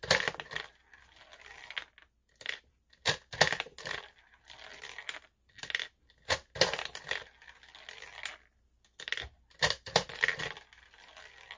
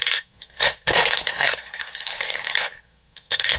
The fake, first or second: second